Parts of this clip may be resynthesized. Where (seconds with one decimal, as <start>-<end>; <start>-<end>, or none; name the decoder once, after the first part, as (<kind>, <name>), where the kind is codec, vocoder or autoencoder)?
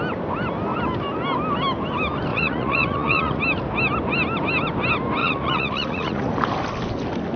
2.3-3.4 (vocoder, Vocos); 5.2-6.3